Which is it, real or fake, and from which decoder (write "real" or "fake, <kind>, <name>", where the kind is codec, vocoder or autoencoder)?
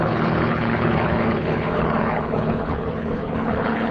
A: fake, codec, HILCodec